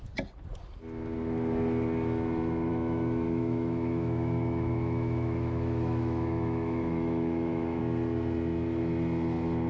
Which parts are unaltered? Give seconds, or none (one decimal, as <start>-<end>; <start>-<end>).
0.0-2.7; 7.8-9.7